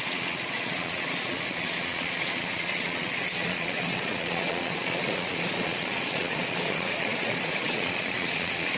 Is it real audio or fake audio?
fake